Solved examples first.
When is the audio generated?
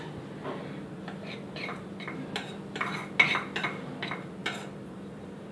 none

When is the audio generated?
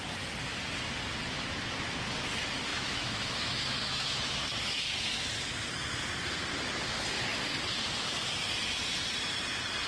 2.7-5.1 (autoencoder, DAC-VAE)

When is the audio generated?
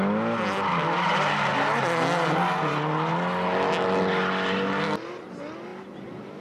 none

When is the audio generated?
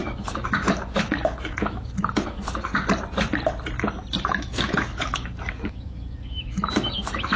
0.0-2.7 (autoencoder, DAC-VAE); 4.2-7.4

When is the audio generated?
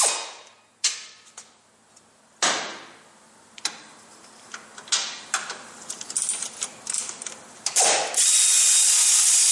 none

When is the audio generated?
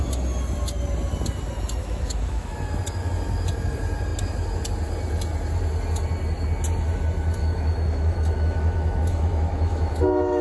1.8-2.5 (autoencoder, DAC-VAE); 7.4-10.4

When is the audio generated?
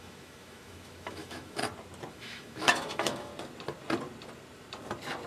0.0-1.6 (autoencoder, DAC-VAE); 2.1-3.3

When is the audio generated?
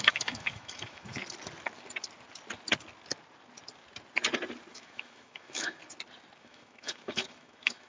0.0-1.2 (autoencoder, DAC-VAE); 4.7-5.8; 6.4-7.9